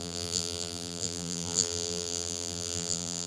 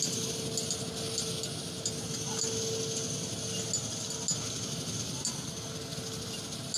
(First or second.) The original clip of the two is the second